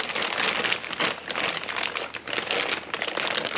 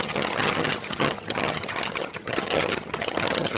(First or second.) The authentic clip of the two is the first